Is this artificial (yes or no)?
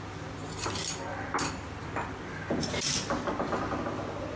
no